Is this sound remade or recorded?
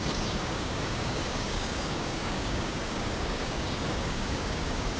remade